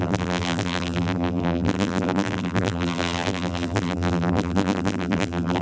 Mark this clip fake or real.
fake